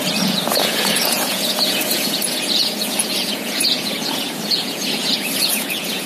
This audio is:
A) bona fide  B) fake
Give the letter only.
B